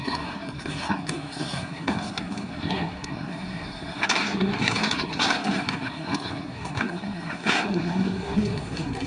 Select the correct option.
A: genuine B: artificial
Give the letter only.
B